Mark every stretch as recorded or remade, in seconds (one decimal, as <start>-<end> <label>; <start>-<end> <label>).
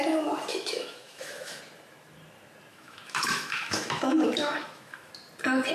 0.0-0.5 recorded; 0.5-1.6 remade; 1.6-2.7 recorded; 2.7-5.1 remade; 5.1-5.7 recorded